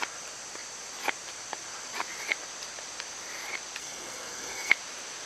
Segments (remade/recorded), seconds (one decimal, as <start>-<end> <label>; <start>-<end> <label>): 0.0-3.8 recorded; 3.8-4.7 remade; 4.7-5.3 recorded